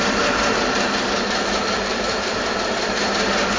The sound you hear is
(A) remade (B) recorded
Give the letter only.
A